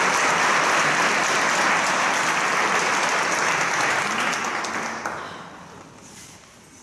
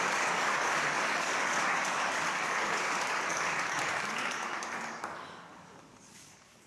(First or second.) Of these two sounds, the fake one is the second